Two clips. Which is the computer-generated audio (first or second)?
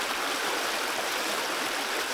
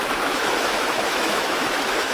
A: second